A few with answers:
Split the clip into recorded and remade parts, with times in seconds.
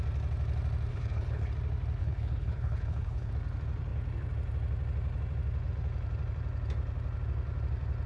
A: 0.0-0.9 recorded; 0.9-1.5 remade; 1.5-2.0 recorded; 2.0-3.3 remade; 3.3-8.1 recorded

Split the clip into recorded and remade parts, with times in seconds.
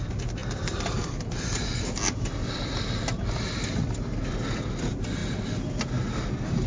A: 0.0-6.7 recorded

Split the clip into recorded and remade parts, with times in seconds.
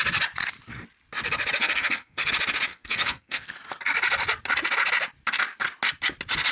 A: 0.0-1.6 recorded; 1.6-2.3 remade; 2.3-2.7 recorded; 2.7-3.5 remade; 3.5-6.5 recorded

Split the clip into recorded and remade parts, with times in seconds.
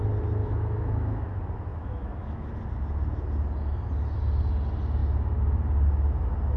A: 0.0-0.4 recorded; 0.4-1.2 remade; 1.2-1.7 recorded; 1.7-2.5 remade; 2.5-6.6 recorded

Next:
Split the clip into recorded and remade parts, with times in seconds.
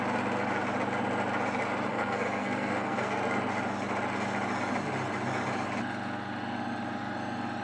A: 0.0-1.9 recorded; 1.9-3.2 remade; 3.2-7.6 recorded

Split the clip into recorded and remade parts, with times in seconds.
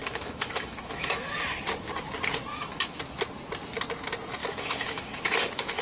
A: 0.0-1.3 remade; 1.3-2.5 recorded; 2.5-3.0 remade; 3.0-4.4 recorded; 4.4-5.8 remade